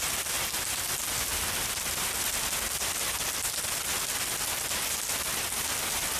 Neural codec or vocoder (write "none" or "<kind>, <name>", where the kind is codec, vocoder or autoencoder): none